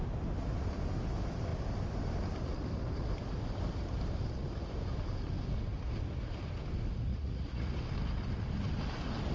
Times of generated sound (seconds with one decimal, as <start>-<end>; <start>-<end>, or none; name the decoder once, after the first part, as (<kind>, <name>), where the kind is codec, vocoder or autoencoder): 7.1-7.7 (vocoder, Vocos)